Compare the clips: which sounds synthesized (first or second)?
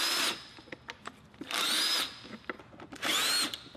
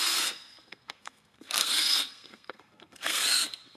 second